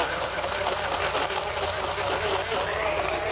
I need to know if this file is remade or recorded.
recorded